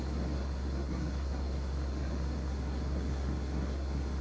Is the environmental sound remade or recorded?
remade